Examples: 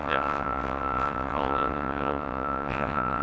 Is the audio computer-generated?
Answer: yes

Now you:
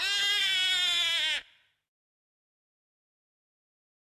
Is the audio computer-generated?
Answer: no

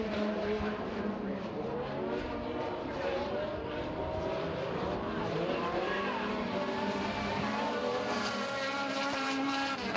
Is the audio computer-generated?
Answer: yes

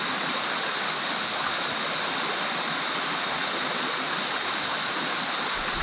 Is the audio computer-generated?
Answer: no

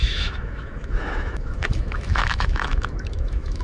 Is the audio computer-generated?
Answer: yes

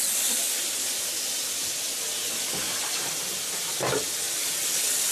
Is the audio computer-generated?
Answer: no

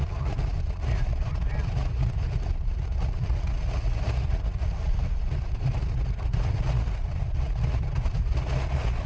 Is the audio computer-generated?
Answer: yes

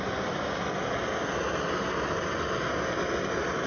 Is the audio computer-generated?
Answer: no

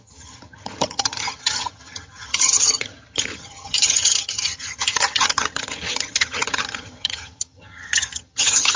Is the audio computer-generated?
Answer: yes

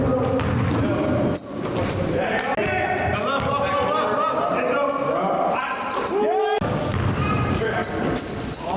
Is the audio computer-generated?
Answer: no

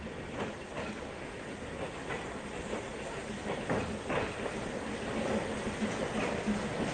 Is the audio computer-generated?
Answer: no